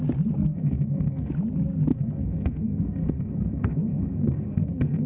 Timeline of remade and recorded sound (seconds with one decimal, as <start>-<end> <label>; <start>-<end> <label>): 0.0-0.5 recorded; 0.5-1.3 remade; 1.3-1.9 recorded; 1.9-5.1 remade